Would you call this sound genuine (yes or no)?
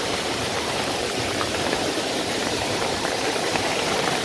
no